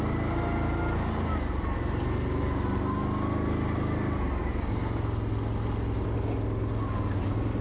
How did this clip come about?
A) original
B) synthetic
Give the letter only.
A